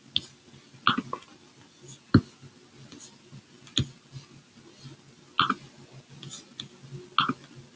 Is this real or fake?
real